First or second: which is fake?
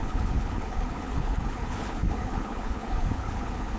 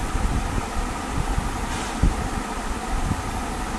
first